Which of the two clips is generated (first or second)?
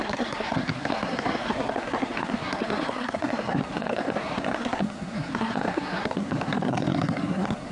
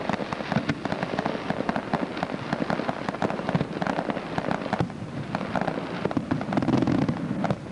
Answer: first